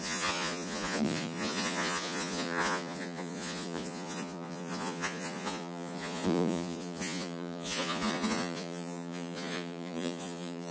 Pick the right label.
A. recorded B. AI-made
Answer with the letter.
B